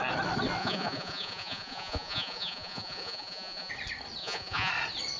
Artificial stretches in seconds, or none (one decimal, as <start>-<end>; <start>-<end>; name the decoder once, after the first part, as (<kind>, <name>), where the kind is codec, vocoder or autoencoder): 0.6-3.7 (vocoder, Vocos); 4.2-4.7

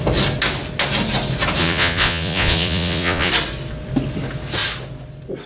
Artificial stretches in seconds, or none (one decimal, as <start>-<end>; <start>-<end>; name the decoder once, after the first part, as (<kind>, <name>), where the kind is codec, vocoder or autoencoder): 1.6-3.3 (vocoder, Vocos)